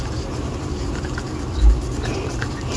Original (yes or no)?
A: yes